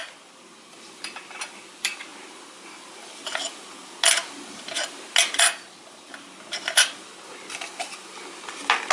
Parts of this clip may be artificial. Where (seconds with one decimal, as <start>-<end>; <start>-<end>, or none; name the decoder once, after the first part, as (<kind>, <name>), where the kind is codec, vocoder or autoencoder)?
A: none